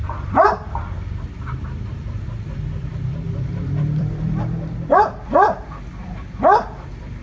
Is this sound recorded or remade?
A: remade